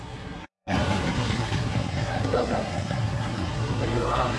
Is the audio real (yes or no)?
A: no